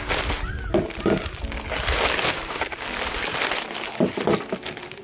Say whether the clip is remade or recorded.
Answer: recorded